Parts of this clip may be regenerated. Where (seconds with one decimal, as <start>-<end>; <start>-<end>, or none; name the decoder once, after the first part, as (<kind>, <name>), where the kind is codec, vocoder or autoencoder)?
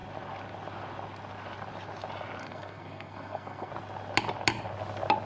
2.4-3.7 (codec, SNAC)